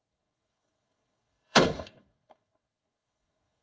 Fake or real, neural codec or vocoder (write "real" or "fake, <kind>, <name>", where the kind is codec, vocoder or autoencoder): fake, codec, DAC